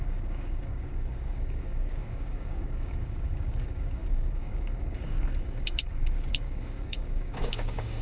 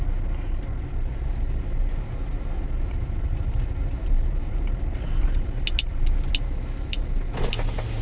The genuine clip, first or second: second